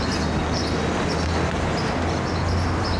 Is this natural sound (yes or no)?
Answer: yes